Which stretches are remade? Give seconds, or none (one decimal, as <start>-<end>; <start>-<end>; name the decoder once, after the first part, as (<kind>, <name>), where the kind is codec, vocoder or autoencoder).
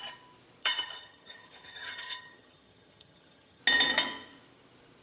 0.6-3.6 (vocoder, HiFi-GAN)